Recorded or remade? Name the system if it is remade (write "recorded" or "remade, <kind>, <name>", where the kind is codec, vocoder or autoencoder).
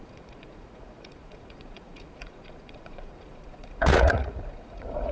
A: remade, vocoder, Vocos